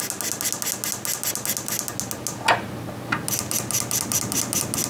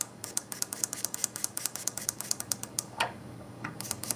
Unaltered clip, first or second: first